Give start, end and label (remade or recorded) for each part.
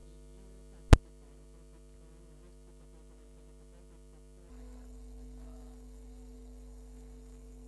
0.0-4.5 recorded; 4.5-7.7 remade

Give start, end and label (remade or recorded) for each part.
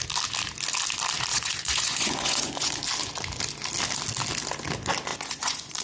0.0-1.3 recorded; 1.3-2.7 remade; 2.7-5.1 recorded; 5.1-5.8 remade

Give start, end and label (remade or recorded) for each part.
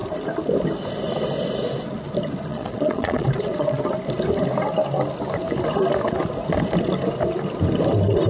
0.0-2.5 recorded; 2.5-3.8 remade; 3.8-8.3 recorded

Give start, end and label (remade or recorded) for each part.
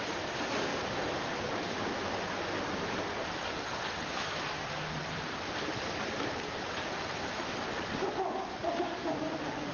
0.0-0.7 recorded; 0.7-2.2 remade; 2.2-5.0 recorded; 5.0-7.5 remade; 7.5-8.6 recorded; 8.6-9.7 remade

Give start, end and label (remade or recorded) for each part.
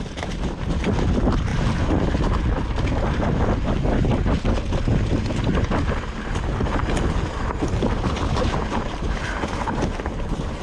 0.0-10.6 recorded